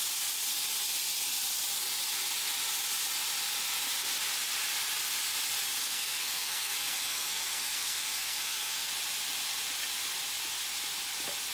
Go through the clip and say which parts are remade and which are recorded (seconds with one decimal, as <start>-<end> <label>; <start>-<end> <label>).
0.0-5.8 recorded; 5.8-8.9 remade; 8.9-11.5 recorded

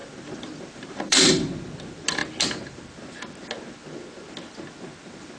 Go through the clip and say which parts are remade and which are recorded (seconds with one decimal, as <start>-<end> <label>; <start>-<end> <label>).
0.0-1.3 remade; 1.3-2.2 recorded; 2.2-2.8 remade; 2.8-5.4 recorded

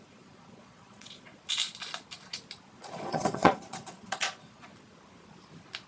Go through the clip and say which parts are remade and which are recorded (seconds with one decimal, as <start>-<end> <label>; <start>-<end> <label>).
0.0-1.3 remade; 1.3-2.7 recorded; 2.7-4.7 remade; 4.7-5.9 recorded

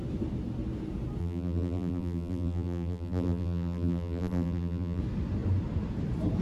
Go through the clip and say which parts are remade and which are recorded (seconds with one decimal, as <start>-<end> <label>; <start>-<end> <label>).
0.0-1.2 recorded; 1.2-5.0 remade; 5.0-6.4 recorded

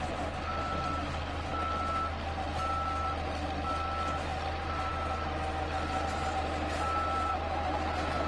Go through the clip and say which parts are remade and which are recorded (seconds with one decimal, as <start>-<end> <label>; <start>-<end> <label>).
0.0-8.3 recorded

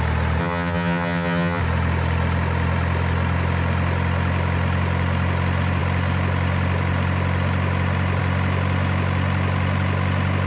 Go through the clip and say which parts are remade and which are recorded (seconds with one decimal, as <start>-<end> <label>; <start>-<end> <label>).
0.0-0.4 recorded; 0.4-1.6 remade; 1.6-10.5 recorded

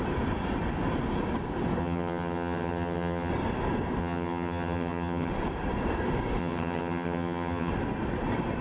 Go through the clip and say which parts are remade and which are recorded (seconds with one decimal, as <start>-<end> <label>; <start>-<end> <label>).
0.0-1.8 recorded; 1.8-3.3 remade; 3.3-4.0 recorded; 4.0-5.3 remade; 5.3-6.4 recorded; 6.4-7.7 remade; 7.7-8.6 recorded